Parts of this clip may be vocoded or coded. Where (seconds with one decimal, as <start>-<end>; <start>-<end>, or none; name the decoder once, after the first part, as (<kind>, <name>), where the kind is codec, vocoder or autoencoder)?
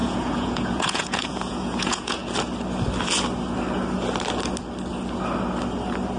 0.0-2.2 (vocoder, Vocos)